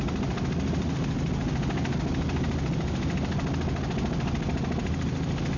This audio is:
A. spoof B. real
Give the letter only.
B